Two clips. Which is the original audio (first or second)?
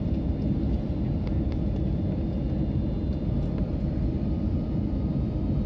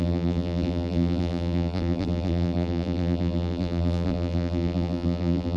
first